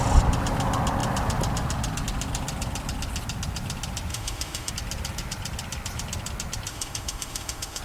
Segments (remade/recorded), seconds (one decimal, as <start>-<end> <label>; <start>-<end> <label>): 0.0-4.1 recorded; 4.1-4.7 remade; 4.7-6.7 recorded; 6.7-7.8 remade